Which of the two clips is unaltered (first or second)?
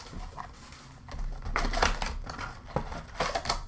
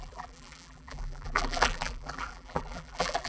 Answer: first